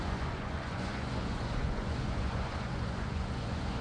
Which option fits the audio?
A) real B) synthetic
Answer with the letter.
B